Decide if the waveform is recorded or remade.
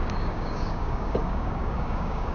remade